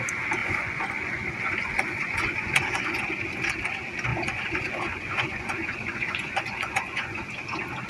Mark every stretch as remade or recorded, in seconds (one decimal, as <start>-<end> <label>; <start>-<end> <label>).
0.0-0.4 recorded; 0.4-3.0 remade; 3.0-4.1 recorded; 4.1-7.2 remade; 7.2-7.9 recorded